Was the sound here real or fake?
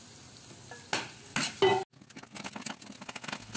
real